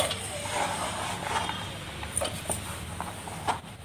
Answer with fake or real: real